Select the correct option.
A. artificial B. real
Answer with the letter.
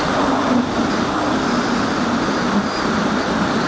B